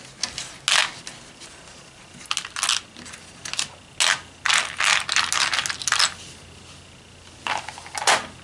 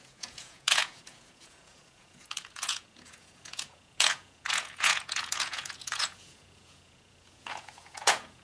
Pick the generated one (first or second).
second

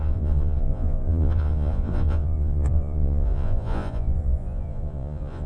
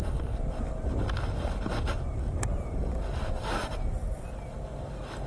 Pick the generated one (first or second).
first